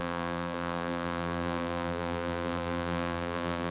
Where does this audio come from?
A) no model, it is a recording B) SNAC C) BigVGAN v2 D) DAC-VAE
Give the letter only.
C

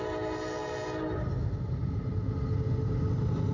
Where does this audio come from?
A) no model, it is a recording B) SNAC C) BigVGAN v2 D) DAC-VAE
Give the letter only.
A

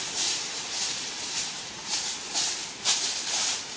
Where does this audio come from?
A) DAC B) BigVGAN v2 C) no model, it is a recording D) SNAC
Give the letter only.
B